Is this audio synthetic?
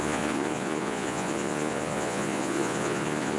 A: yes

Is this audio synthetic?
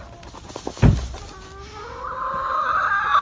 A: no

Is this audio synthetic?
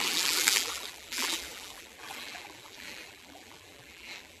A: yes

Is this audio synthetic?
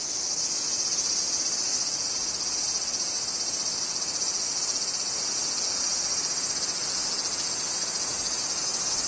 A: no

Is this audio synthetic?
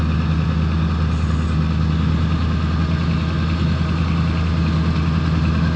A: no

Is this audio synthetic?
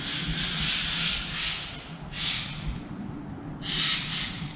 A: no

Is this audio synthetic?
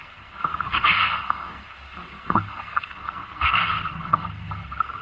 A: yes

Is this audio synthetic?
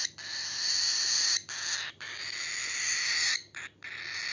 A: no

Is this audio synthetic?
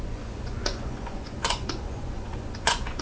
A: yes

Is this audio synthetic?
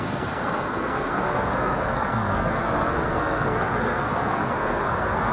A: yes